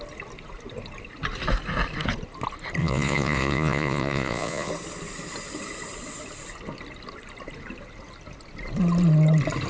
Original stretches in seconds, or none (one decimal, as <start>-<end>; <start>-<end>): 0.0-2.8; 4.7-9.7